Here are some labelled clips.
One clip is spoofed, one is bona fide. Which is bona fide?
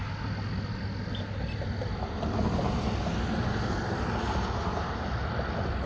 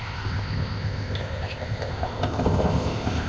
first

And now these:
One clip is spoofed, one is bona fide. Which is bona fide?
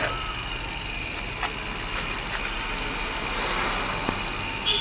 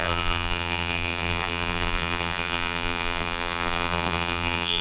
first